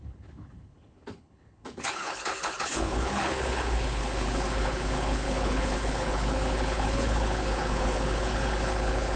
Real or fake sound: fake